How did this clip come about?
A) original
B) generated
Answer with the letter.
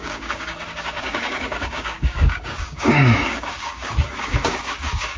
B